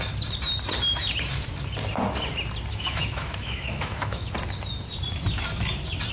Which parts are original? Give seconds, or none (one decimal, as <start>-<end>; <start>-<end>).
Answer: 0.0-2.7; 4.3-6.1